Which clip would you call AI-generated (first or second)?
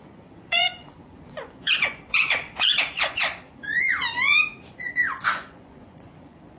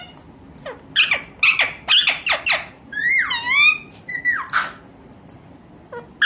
first